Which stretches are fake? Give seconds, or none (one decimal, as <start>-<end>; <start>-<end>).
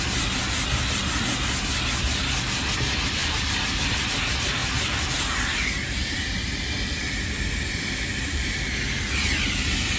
3.2-3.8; 4.6-8.7